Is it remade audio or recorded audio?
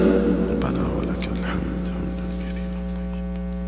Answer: recorded